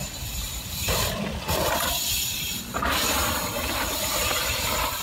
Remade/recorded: remade